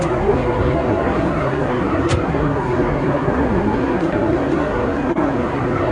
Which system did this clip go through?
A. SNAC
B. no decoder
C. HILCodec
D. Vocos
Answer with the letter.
A